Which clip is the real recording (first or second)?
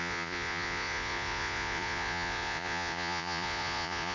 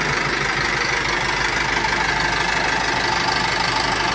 second